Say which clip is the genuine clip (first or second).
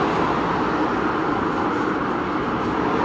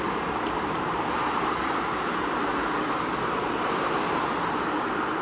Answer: first